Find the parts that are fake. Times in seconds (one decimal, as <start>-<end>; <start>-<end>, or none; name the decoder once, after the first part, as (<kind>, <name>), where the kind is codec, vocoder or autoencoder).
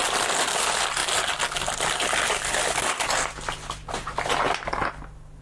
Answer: none